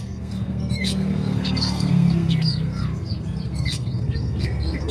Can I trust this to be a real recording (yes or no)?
no